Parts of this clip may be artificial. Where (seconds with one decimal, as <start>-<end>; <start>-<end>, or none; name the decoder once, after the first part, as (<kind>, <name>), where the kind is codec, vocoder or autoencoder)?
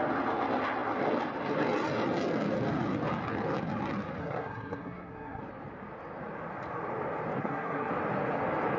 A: 4.2-5.4 (codec, SNAC); 7.4-7.9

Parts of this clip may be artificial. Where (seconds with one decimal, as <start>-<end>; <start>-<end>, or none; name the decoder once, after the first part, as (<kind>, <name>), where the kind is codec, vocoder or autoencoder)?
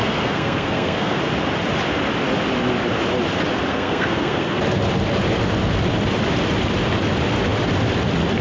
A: 0.0-1.2 (codec, SNAC); 3.7-4.6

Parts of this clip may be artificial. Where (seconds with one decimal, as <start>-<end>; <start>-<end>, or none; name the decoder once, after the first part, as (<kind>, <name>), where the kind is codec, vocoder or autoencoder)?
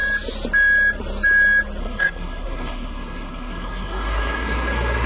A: 1.8-5.1 (codec, SNAC)